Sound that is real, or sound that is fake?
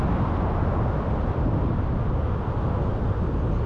real